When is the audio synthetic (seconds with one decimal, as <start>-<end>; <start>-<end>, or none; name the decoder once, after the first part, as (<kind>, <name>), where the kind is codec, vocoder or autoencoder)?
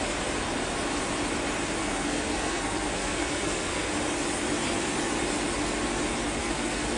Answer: 1.8-3.9 (codec, SNAC); 6.4-7.0